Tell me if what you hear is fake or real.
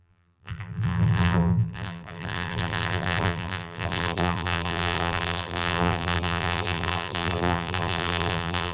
fake